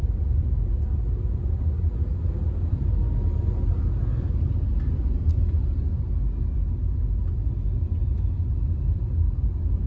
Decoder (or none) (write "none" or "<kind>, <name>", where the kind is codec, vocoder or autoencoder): none